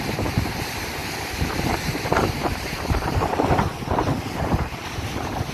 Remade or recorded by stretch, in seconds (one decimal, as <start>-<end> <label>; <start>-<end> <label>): 0.0-5.5 remade